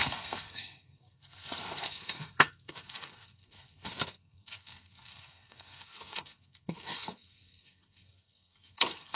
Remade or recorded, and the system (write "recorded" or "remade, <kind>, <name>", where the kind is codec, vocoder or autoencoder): remade, codec, SNAC